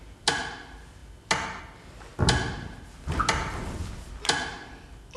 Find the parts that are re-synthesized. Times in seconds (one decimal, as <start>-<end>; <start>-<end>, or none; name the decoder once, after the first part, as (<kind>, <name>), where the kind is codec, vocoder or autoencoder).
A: none